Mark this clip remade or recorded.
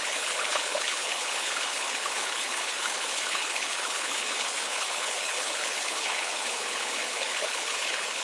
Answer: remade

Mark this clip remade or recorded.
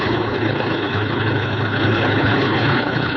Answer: remade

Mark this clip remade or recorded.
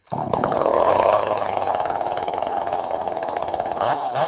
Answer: remade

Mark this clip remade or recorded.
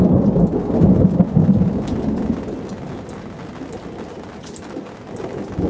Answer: recorded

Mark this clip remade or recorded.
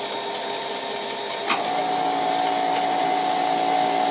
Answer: recorded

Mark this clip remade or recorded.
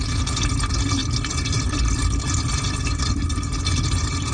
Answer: recorded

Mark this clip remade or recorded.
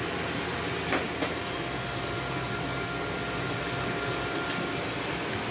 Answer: recorded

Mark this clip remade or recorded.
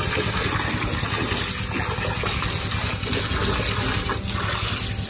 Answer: recorded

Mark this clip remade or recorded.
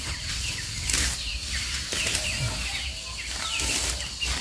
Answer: recorded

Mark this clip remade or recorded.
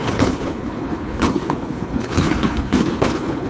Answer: remade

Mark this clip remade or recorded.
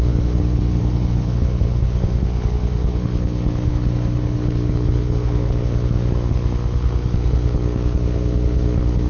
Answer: remade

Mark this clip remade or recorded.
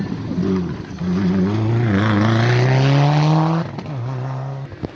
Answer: recorded